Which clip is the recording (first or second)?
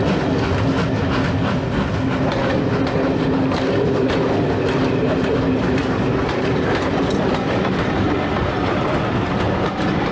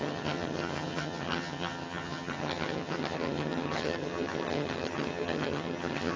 first